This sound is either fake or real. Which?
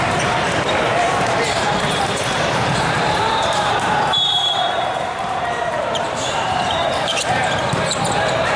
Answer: fake